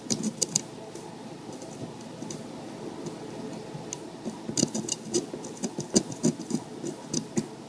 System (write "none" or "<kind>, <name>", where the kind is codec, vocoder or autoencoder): none